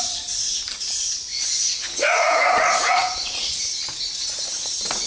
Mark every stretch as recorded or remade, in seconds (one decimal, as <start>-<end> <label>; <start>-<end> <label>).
0.0-1.3 recorded; 1.3-3.5 remade; 3.5-5.1 recorded